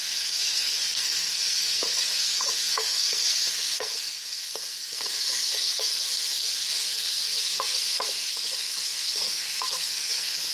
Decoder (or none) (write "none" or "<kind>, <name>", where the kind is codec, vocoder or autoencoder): codec, SNAC